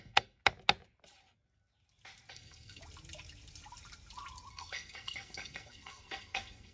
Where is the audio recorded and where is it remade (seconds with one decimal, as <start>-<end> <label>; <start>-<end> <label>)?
0.0-0.4 remade; 0.4-2.3 recorded; 2.3-2.8 remade; 2.8-4.5 recorded; 4.5-6.7 remade